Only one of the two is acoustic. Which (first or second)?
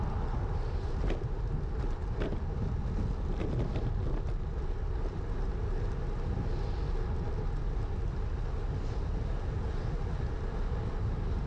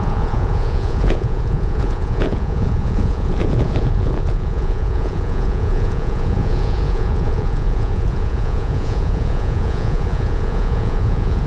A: first